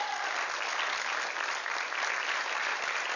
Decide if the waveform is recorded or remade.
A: recorded